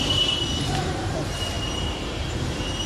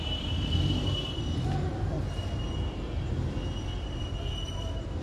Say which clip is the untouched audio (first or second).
second